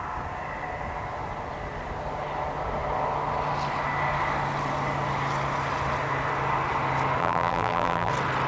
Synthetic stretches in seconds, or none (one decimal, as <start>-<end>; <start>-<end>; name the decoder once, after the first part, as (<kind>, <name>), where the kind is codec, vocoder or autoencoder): 7.2-8.1 (vocoder, BigVGAN v2)